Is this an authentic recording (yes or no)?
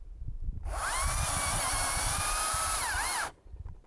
no